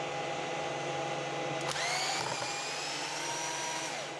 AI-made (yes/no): no